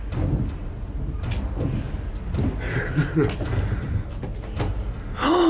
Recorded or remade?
recorded